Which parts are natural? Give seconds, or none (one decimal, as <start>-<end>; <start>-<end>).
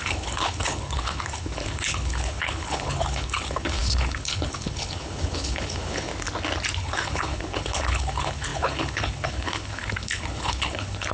6.1-6.8